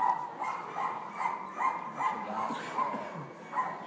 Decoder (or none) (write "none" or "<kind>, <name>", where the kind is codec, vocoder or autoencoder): none